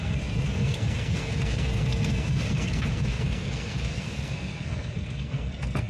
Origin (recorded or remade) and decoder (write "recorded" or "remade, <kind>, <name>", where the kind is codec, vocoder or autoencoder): remade, codec, SNAC